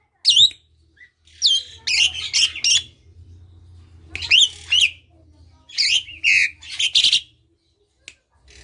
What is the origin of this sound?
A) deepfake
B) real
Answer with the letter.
B